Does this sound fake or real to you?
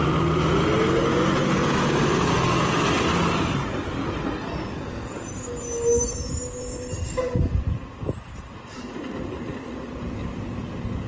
real